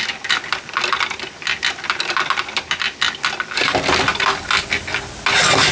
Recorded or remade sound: recorded